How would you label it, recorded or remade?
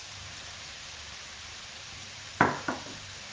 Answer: remade